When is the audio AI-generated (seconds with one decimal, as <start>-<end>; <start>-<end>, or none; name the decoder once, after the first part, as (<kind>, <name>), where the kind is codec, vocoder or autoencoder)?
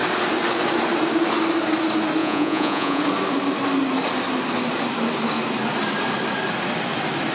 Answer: 2.2-3.0 (vocoder, Vocos)